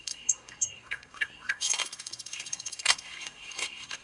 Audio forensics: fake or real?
fake